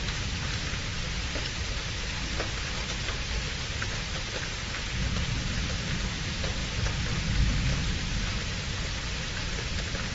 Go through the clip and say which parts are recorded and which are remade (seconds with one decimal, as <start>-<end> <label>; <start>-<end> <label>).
0.0-0.9 recorded; 0.9-5.8 remade; 5.8-6.6 recorded; 6.6-7.3 remade; 7.3-7.7 recorded; 7.7-8.7 remade; 8.7-10.1 recorded